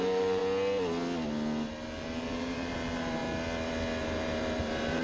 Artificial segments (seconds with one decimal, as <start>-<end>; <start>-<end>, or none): 0.0-0.4; 1.7-3.2; 4.0-5.0